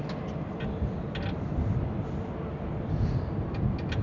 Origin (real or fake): real